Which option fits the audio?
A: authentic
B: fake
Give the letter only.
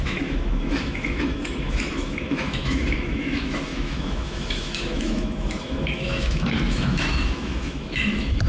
B